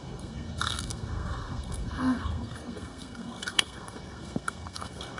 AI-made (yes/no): yes